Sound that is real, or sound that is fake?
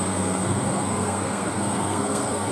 fake